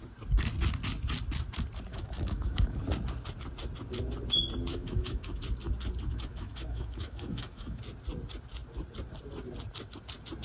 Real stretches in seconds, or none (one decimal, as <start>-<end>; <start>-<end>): 0.0-1.9; 2.8-4.7; 5.4-6.1; 7.8-10.4